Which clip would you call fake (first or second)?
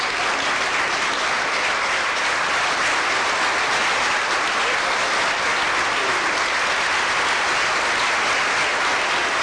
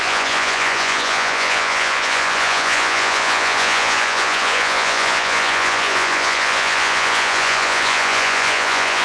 second